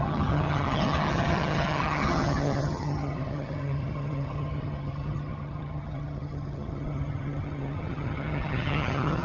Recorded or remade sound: remade